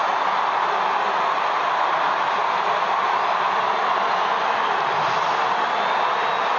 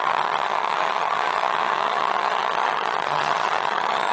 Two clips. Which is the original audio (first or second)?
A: first